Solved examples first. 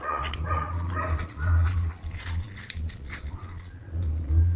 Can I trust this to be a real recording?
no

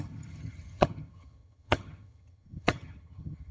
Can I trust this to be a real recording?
no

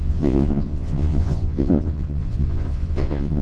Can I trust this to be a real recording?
no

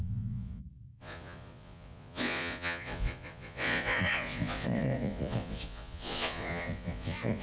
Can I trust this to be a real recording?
no